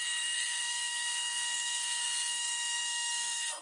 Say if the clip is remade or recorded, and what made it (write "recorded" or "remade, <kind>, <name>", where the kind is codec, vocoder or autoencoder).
remade, codec, SNAC